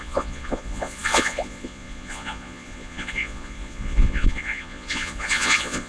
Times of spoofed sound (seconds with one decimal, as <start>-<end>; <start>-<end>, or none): 0.0-5.9